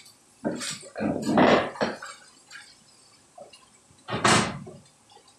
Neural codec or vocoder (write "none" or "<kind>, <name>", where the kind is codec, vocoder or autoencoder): none